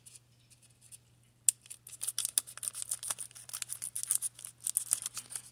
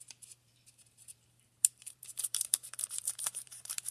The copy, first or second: second